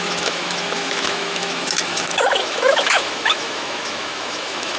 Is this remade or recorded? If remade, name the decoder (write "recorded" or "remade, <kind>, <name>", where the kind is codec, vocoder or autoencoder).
remade, autoencoder, DAC-VAE